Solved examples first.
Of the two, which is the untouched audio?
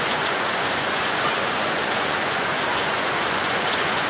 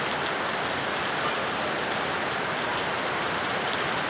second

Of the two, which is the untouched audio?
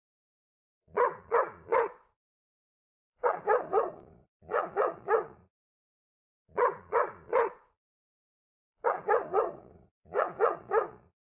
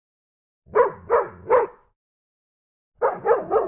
second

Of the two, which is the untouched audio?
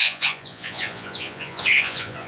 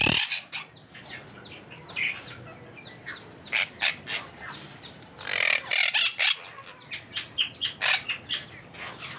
second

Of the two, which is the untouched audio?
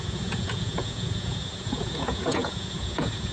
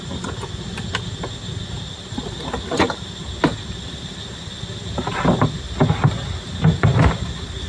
second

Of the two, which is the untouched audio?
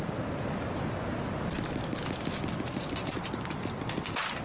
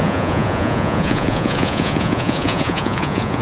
first